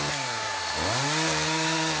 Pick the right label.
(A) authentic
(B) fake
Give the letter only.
A